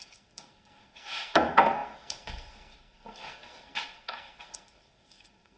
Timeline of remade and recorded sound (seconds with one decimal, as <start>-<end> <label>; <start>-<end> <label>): 0.0-5.6 remade